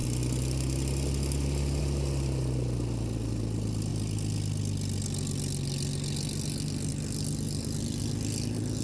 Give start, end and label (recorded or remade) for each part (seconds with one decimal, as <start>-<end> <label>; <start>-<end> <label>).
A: 0.0-8.8 recorded